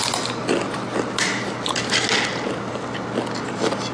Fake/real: real